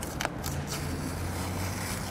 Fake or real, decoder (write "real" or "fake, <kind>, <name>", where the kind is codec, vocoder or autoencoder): real